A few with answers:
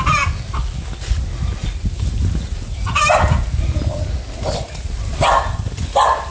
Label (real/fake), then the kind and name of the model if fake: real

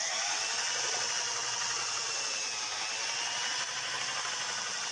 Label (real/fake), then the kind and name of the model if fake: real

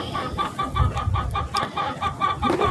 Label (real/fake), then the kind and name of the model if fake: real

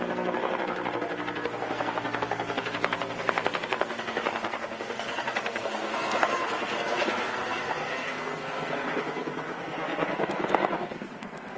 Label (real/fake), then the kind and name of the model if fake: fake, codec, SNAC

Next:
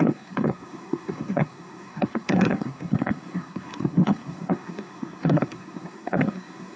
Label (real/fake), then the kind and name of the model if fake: fake, codec, SNAC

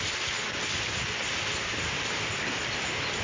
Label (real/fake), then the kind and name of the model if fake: real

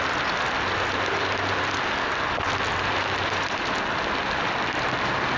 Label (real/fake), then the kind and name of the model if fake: real